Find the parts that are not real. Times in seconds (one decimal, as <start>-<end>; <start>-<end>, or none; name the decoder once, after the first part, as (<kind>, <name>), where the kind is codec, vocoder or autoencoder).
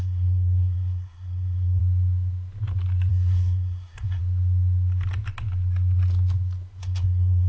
0.0-1.8 (codec, SNAC); 3.1-4.2; 6.8-7.5